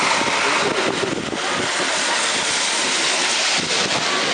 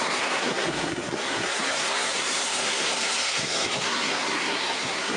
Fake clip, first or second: second